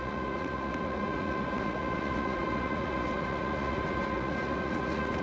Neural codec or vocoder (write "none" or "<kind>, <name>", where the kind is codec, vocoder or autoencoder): vocoder, Vocos